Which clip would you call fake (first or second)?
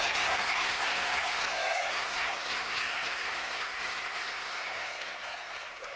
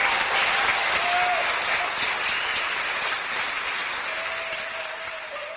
first